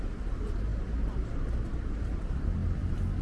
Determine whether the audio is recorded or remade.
recorded